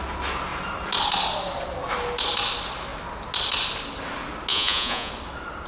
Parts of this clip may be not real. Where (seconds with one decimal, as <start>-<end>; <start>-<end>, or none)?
4.5-5.1